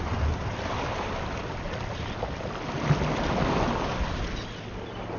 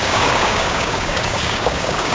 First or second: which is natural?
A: first